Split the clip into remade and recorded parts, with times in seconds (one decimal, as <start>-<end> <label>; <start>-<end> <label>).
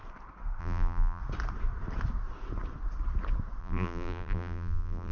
0.0-0.6 recorded; 0.6-1.2 remade; 1.2-3.6 recorded; 3.6-5.1 remade